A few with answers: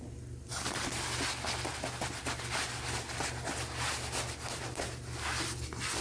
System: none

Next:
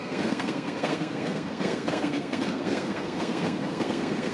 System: codec, SNAC